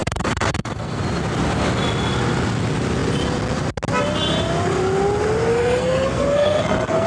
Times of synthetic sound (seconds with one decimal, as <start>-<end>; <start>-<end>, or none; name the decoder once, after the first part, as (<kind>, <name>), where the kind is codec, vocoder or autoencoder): 0.0-1.0 (codec, SNAC); 5.5-7.1